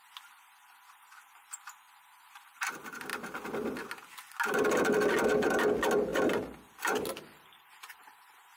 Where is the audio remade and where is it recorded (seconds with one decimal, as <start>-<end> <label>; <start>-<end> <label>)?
0.0-8.6 recorded